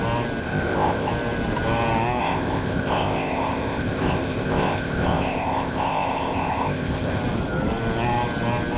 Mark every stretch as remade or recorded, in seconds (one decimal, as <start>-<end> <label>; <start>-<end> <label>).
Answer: 0.0-0.4 recorded; 0.4-1.1 remade; 1.1-2.2 recorded; 2.2-7.2 remade; 7.2-8.8 recorded